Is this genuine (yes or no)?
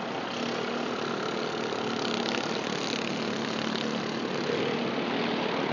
yes